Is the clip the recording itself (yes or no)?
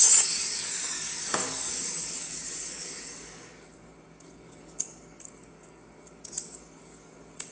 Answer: no